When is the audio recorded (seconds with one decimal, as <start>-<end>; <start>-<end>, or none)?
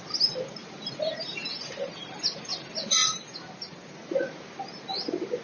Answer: 0.0-0.6; 2.4-3.0; 4.1-5.4